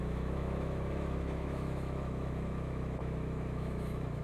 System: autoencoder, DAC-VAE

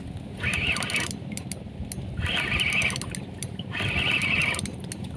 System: none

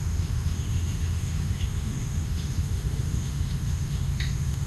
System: autoencoder, DAC-VAE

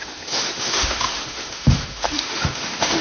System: autoencoder, DAC-VAE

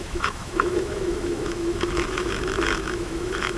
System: autoencoder, DAC-VAE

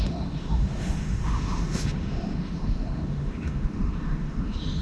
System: autoencoder, DAC-VAE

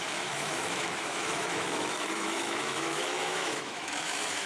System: autoencoder, DAC-VAE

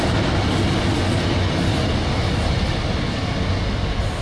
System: none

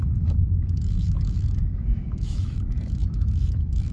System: autoencoder, DAC-VAE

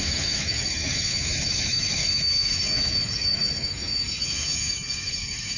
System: autoencoder, DAC-VAE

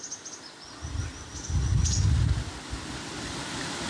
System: none